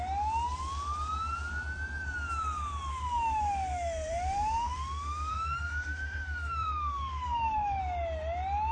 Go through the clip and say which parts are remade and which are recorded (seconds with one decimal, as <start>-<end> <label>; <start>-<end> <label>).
0.0-2.9 recorded; 2.9-7.8 remade; 7.8-8.7 recorded